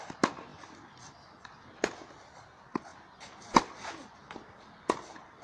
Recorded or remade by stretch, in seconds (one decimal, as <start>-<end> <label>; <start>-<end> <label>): 0.0-5.4 recorded